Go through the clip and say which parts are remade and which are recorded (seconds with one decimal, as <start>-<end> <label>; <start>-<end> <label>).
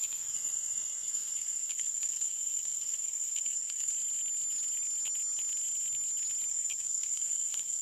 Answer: 0.0-3.9 remade; 3.9-6.5 recorded; 6.5-7.8 remade